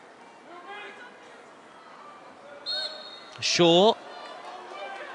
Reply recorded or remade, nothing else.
recorded